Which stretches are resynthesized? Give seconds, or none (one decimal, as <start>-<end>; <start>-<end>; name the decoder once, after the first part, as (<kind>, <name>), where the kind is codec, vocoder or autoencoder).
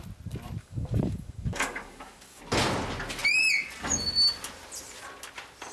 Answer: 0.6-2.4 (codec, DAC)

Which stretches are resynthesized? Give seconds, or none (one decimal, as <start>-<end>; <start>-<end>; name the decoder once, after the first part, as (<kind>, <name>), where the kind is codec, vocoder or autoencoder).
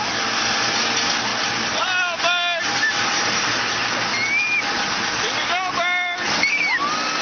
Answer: none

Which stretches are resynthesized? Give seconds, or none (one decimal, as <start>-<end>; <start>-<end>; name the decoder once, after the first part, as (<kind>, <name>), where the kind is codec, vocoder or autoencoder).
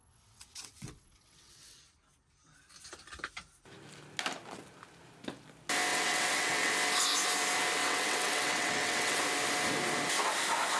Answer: 0.0-1.8 (vocoder, WaveNeXt); 5.9-6.7; 7.8-9.2